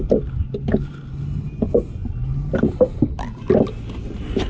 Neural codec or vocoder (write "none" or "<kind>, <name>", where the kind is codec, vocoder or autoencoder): none